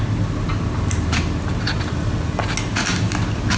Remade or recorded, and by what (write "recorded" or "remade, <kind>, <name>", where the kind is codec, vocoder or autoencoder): recorded